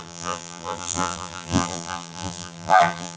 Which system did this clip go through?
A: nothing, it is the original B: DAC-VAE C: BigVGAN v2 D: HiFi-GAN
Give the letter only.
C